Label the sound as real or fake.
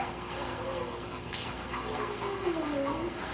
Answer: fake